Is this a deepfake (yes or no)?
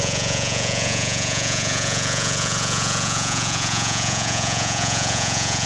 yes